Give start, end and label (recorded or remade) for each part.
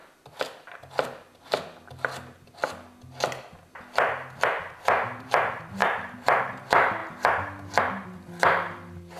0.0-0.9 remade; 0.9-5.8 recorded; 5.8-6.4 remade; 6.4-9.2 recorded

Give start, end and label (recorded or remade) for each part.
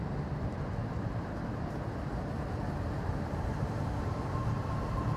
0.0-0.8 recorded; 0.8-1.5 remade; 1.5-2.1 recorded; 2.1-5.2 remade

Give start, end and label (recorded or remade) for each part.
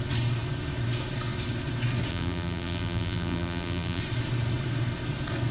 0.0-2.1 recorded; 2.1-4.0 remade; 4.0-5.5 recorded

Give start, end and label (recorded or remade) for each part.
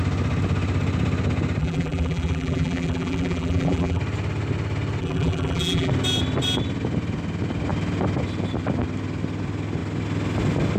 0.0-1.6 recorded; 1.6-4.0 remade; 4.0-5.0 recorded; 5.0-5.9 remade; 5.9-10.8 recorded